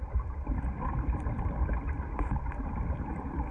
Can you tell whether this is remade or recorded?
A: remade